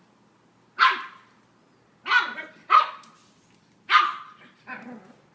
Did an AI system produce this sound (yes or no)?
no